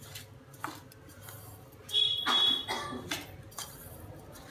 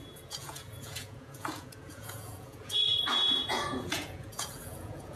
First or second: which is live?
first